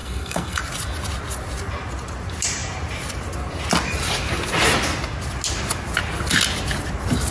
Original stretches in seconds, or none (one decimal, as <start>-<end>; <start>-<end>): 0.6-7.3